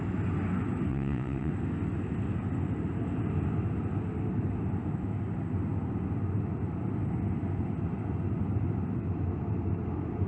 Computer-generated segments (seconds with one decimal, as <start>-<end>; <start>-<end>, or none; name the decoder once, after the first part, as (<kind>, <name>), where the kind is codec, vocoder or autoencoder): 0.9-1.5 (vocoder, WaveNeXt)